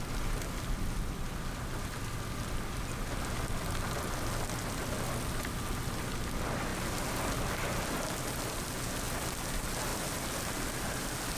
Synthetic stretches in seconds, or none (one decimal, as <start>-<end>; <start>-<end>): none